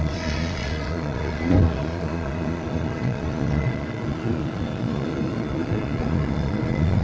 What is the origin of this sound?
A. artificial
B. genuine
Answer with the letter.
A